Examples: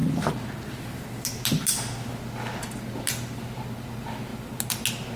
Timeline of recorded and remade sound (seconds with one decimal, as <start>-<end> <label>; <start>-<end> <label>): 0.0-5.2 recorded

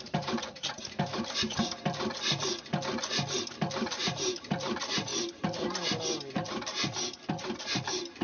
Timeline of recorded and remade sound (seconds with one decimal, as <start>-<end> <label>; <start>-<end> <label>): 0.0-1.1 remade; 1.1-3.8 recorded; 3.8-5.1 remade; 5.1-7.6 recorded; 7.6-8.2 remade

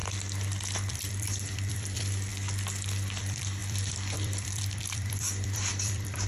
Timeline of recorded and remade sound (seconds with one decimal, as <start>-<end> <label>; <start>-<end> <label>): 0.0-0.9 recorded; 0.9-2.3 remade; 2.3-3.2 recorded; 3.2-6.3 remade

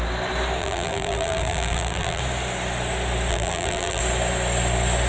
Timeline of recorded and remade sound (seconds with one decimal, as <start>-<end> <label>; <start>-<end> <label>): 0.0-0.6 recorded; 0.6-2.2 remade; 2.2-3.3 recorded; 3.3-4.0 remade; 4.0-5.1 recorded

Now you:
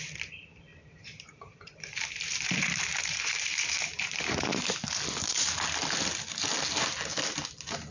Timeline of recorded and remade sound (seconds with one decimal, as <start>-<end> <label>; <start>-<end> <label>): 0.0-0.7 recorded; 0.7-4.6 remade; 4.6-7.9 recorded

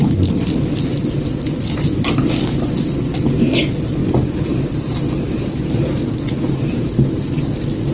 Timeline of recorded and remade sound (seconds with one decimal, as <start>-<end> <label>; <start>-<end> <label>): 0.0-4.0 recorded; 4.0-7.4 remade; 7.4-7.9 recorded

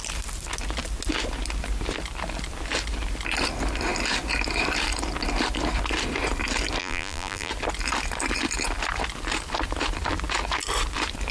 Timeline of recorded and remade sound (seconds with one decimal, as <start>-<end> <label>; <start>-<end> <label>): 0.0-6.8 recorded; 6.8-7.5 remade; 7.5-11.3 recorded